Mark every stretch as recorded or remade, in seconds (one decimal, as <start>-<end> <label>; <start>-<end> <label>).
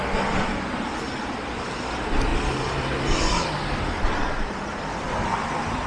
0.0-5.9 recorded